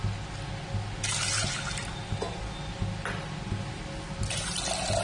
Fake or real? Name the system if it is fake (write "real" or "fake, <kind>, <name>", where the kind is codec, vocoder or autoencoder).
real